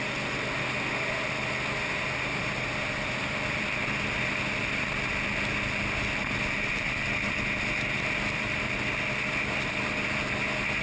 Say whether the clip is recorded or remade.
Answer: recorded